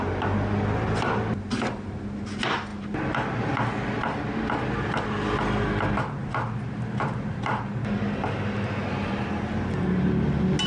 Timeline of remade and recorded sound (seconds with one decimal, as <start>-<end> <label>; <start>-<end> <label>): 0.0-10.7 recorded